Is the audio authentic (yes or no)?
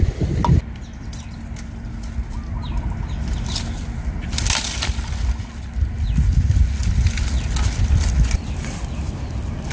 yes